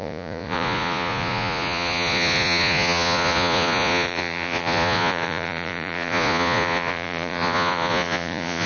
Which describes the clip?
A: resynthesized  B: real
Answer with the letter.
A